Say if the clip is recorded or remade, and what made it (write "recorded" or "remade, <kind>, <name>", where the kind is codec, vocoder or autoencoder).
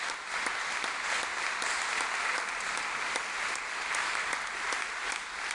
recorded